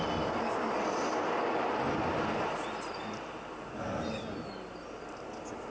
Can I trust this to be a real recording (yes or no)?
yes